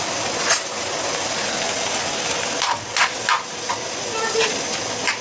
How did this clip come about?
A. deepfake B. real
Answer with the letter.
B